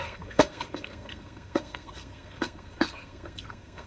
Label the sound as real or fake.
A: fake